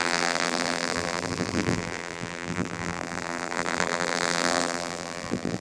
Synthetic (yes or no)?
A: yes